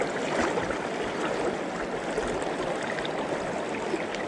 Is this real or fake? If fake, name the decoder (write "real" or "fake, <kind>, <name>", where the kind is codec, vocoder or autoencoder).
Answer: real